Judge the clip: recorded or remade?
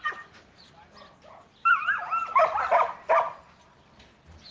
recorded